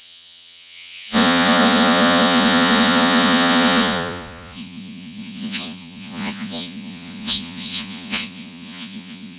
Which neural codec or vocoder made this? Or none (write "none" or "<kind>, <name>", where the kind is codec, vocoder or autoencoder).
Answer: vocoder, Vocos